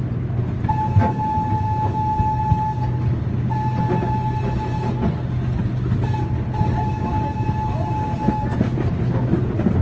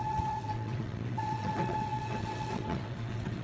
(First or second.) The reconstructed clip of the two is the second